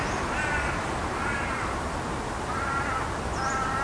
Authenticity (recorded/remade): recorded